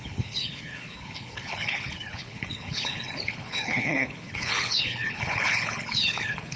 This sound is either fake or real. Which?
fake